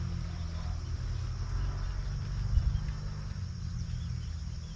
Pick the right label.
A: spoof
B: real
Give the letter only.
B